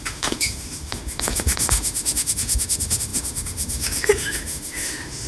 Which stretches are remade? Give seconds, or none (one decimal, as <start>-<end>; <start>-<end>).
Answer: 0.0-5.3